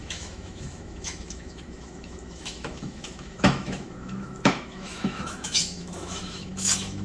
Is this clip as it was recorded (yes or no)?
no